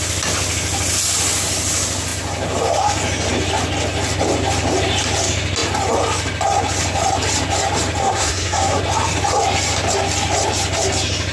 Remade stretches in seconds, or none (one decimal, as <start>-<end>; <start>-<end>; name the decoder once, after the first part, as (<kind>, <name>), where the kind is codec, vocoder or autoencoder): 8.0-8.8 (codec, SNAC)